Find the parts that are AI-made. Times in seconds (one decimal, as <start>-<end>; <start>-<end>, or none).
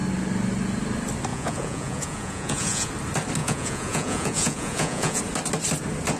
1.3-2.9; 3.4-5.2